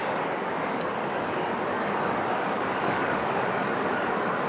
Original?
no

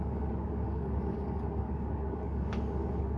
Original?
no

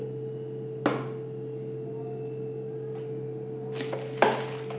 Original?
yes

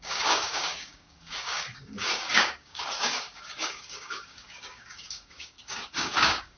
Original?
no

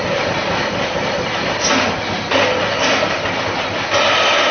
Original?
yes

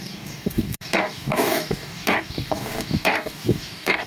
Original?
no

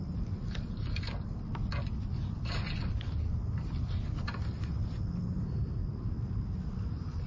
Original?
yes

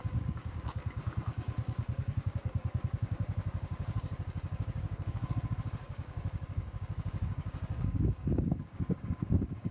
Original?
no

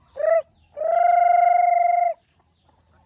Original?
yes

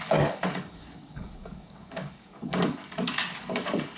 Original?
no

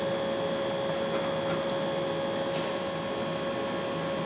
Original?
yes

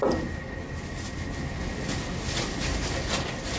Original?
yes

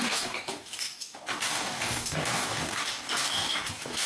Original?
no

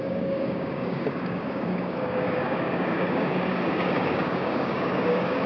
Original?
no